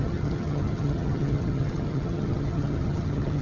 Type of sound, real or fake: fake